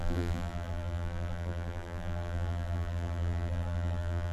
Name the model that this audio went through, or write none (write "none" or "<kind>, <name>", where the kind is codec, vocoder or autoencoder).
vocoder, BigVGAN v2